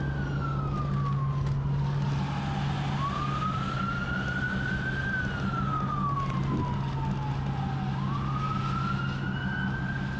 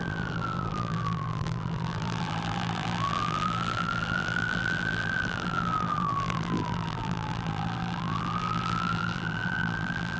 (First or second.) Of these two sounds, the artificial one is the second